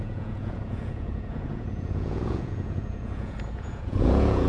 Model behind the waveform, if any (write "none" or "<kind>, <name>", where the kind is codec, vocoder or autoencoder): vocoder, Vocos